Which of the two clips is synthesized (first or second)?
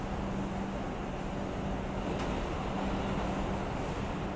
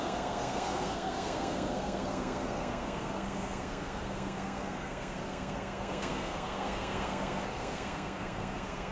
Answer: second